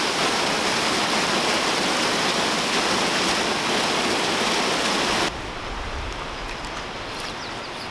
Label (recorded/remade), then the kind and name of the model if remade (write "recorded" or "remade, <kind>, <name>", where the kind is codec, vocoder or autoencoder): recorded